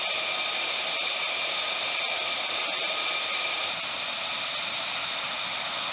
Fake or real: real